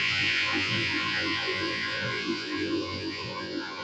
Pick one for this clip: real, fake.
fake